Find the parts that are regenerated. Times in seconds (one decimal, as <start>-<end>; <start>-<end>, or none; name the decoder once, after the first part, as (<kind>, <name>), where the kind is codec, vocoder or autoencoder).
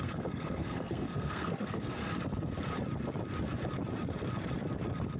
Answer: 0.0-2.0 (codec, SNAC)